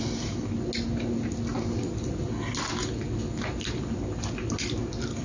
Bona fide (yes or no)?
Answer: yes